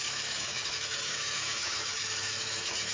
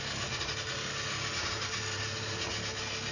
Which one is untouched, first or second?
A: second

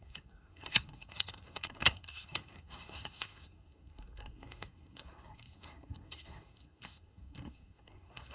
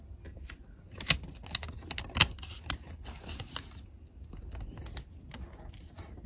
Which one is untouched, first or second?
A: second